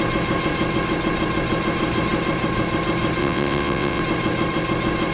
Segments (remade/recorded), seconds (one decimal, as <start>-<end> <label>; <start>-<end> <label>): 0.0-3.2 recorded; 3.2-4.0 remade; 4.0-5.1 recorded